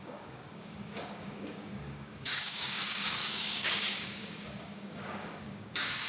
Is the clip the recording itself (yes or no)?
no